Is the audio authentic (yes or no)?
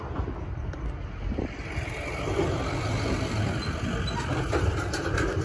yes